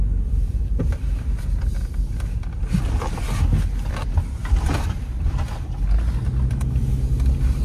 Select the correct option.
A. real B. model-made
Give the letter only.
A